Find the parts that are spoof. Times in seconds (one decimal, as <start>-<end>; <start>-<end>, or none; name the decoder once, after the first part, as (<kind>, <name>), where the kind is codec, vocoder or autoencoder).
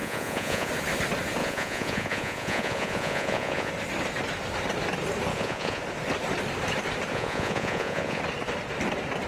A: 0.0-0.7 (vocoder, Vocos); 1.4-3.7; 5.3-5.8; 7.1-8.2